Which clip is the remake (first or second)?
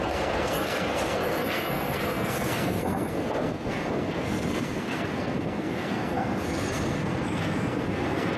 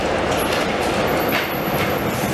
first